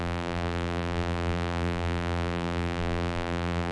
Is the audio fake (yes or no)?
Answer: yes